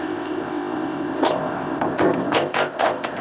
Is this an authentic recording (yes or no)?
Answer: no